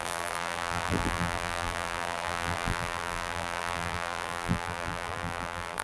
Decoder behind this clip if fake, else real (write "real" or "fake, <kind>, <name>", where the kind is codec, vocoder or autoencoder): fake, vocoder, BigVGAN v2